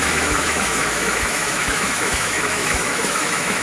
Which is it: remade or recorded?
remade